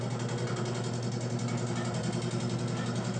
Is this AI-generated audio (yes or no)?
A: no